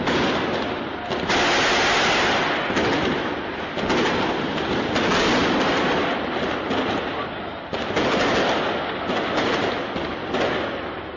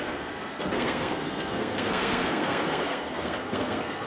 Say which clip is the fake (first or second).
second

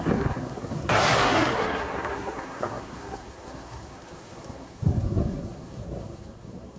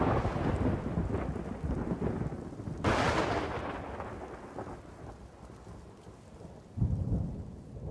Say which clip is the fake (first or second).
first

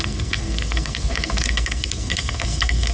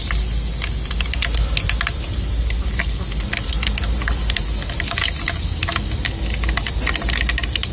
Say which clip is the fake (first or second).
first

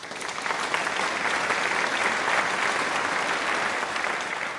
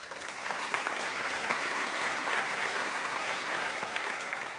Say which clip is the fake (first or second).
second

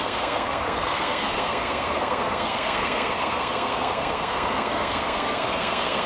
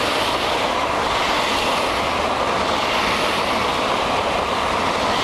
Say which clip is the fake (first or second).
first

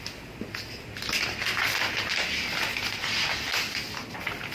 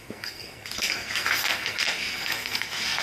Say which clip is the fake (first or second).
second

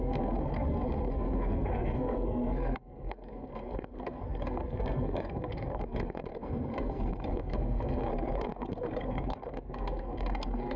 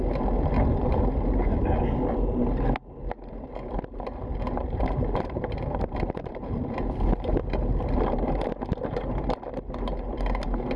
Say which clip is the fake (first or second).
first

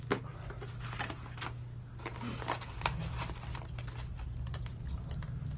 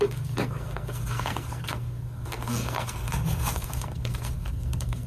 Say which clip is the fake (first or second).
second